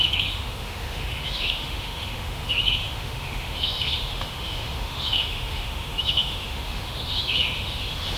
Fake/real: fake